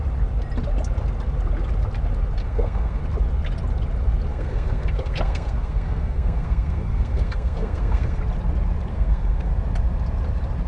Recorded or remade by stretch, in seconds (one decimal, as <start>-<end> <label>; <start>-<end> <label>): 0.0-2.4 recorded; 2.4-3.0 remade; 3.0-4.3 recorded; 4.3-8.2 remade; 8.2-8.9 recorded; 8.9-9.5 remade; 9.5-10.7 recorded

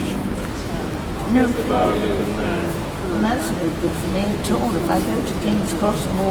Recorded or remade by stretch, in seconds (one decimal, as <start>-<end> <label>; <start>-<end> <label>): 0.0-5.3 remade; 5.3-5.8 recorded; 5.8-6.3 remade

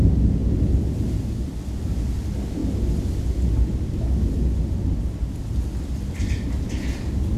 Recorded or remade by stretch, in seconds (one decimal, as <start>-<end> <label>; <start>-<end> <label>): 0.0-7.4 recorded

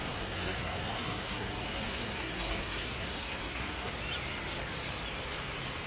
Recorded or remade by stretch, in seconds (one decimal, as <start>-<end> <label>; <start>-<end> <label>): 0.0-3.9 remade; 3.9-5.9 recorded

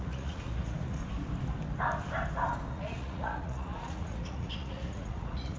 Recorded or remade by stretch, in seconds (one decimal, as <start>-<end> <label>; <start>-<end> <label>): 0.0-1.0 remade; 1.0-2.7 recorded; 2.7-5.6 remade

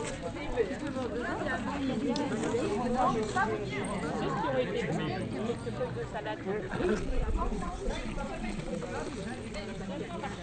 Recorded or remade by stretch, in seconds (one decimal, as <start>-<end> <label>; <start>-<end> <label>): 0.0-6.7 recorded; 6.7-8.8 remade; 8.8-10.4 recorded

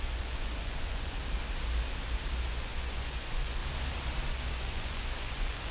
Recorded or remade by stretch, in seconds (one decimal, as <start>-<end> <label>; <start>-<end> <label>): 0.0-1.2 remade; 1.2-2.5 recorded; 2.5-3.6 remade; 3.6-4.3 recorded; 4.3-5.7 remade